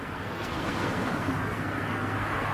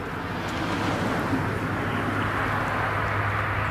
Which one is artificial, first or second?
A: first